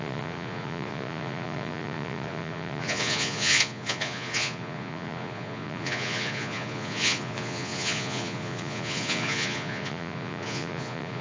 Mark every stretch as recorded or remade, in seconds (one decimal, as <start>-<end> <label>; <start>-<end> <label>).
0.0-11.2 remade